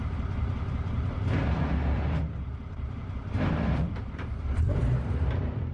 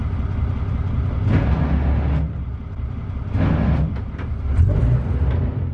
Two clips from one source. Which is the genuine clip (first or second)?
second